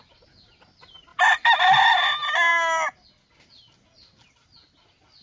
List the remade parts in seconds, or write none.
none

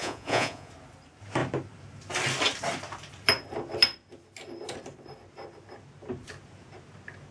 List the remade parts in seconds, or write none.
0.0-0.7 (vocoder, Vocos)